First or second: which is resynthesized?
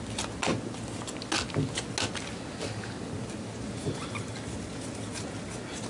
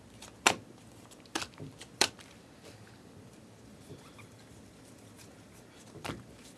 second